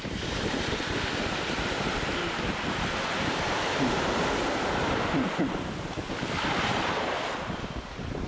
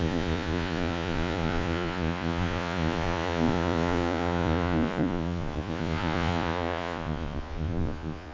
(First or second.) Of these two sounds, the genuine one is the first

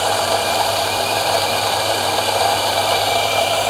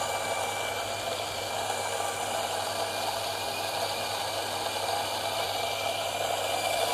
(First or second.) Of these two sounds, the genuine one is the second